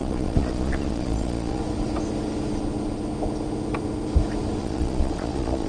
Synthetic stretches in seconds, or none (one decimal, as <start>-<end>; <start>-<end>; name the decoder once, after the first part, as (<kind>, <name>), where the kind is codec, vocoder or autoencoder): 0.0-1.6 (vocoder, Vocos); 4.6-5.7